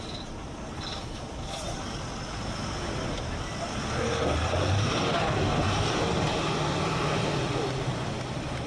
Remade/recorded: recorded